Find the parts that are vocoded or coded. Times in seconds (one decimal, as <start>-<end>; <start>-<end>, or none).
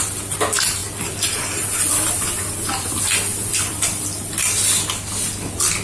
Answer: 0.8-4.3